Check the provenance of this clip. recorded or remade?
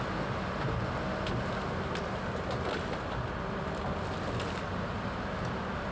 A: recorded